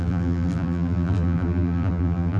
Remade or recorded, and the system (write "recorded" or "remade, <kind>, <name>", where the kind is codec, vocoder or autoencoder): remade, vocoder, BigVGAN v2